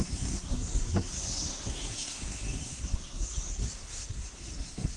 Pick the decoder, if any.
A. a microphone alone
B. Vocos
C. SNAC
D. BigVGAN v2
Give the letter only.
C